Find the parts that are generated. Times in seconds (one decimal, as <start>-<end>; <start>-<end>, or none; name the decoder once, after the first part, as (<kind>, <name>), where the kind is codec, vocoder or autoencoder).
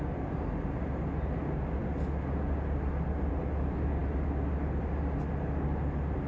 none